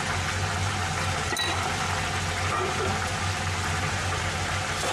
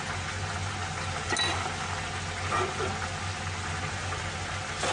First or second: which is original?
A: second